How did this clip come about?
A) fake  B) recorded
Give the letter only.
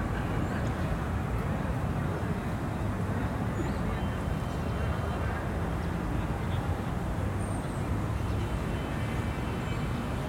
B